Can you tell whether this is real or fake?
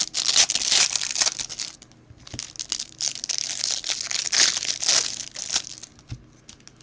real